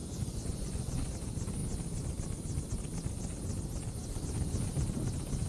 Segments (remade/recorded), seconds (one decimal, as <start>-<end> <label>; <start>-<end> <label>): 0.0-1.1 remade; 1.1-5.5 recorded